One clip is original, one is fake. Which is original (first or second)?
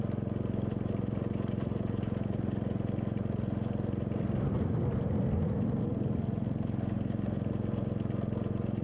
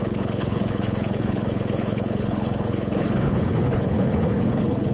first